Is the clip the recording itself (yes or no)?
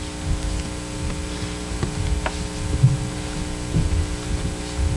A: yes